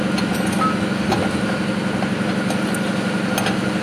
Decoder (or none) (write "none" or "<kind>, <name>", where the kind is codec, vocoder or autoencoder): none